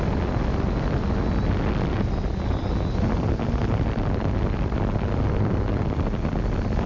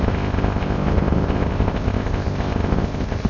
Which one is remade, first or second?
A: second